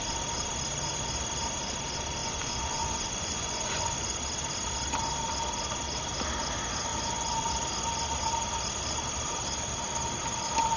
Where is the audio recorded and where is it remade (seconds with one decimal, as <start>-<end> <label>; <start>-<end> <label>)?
0.0-2.2 recorded; 2.2-4.2 remade; 4.2-6.9 recorded; 6.9-7.5 remade; 7.5-10.8 recorded